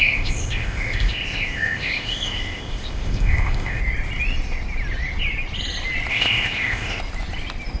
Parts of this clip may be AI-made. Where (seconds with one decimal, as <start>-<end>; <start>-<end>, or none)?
0.0-3.8; 6.1-7.0